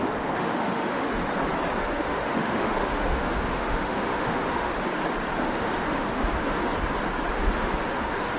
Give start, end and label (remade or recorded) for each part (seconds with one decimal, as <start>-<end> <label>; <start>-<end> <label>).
0.0-1.2 remade; 1.2-1.8 recorded; 1.8-4.7 remade; 4.7-5.4 recorded; 5.4-6.7 remade; 6.7-7.3 recorded; 7.3-8.4 remade